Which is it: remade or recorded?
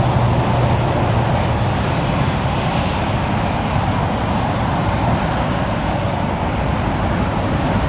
recorded